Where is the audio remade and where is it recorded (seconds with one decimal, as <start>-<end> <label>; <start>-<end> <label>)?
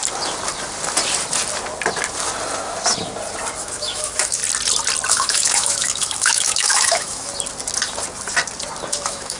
0.0-3.6 recorded; 3.6-4.4 remade; 4.4-5.1 recorded; 5.1-7.3 remade; 7.3-8.9 recorded; 8.9-9.4 remade